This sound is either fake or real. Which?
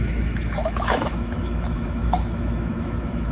fake